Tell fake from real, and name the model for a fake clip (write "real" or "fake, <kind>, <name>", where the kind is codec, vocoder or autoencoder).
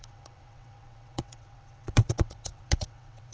fake, vocoder, WaveNeXt